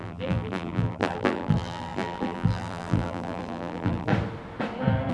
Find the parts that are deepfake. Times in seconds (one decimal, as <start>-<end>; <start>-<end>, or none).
0.0-4.1